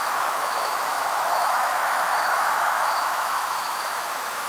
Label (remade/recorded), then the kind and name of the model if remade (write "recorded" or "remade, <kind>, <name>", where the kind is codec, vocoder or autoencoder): remade, autoencoder, DAC-VAE